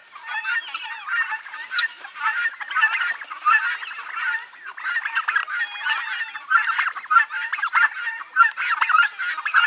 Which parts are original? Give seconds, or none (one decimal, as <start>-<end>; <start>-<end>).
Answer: 0.0-9.7